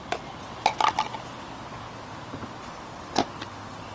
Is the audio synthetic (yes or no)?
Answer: no